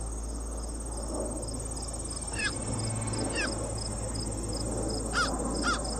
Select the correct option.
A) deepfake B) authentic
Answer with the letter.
B